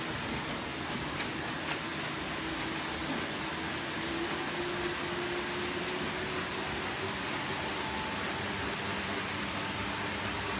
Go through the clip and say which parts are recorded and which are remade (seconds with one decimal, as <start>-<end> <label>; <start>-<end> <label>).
0.0-10.6 recorded